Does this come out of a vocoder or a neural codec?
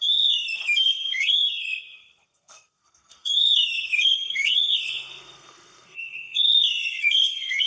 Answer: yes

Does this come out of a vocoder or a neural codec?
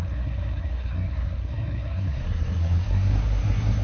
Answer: yes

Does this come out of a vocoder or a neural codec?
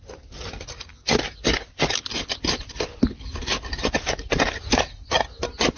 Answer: no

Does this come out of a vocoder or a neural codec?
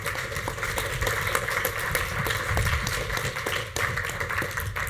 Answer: no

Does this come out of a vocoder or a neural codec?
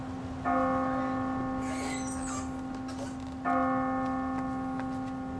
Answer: no